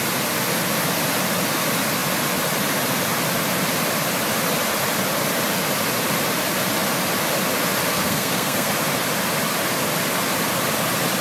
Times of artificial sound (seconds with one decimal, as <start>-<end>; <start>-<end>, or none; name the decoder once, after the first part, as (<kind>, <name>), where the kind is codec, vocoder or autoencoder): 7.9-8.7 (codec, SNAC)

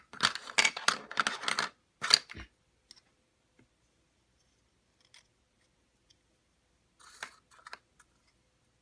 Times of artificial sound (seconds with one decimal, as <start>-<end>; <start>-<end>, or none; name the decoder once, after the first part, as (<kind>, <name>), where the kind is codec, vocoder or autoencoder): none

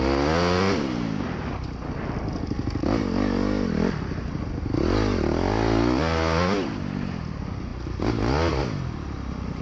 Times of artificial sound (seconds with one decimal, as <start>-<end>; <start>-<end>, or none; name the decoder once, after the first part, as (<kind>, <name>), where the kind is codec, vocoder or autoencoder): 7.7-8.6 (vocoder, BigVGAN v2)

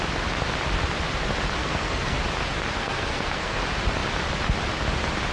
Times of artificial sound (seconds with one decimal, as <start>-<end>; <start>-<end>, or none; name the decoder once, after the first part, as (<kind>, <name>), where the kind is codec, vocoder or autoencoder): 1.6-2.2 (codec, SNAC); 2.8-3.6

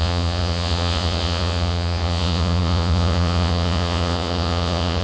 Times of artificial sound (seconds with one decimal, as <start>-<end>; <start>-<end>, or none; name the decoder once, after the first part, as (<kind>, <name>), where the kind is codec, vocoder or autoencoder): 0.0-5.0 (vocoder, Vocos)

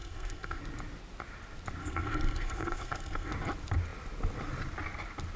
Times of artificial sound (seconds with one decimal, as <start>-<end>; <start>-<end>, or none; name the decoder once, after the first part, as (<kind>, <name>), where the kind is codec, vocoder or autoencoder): 0.0-0.6 (codec, SNAC); 1.8-3.3

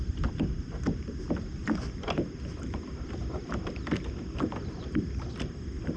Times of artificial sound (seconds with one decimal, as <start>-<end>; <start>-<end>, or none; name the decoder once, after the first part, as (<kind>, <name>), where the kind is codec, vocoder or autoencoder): none